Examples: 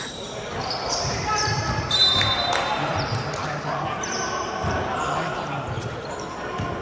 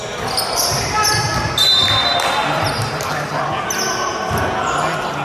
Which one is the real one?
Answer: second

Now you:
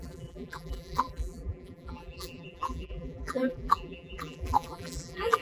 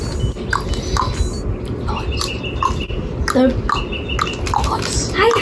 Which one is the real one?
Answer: second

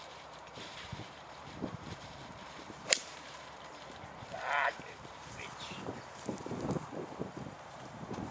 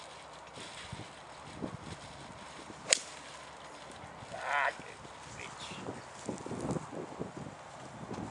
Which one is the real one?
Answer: second